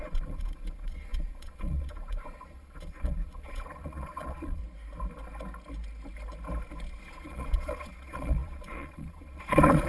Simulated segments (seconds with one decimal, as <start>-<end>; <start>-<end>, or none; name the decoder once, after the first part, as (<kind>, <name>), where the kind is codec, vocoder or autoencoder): 0.0-4.6 (vocoder, Vocos); 7.0-9.9